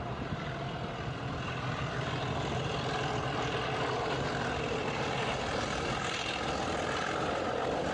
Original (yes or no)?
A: yes